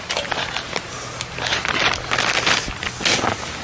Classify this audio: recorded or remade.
recorded